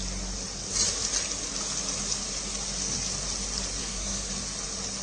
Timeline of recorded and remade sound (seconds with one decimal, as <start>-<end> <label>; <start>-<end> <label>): 0.0-3.8 recorded; 3.8-4.3 remade; 4.3-5.0 recorded